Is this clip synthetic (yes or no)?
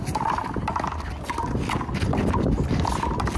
no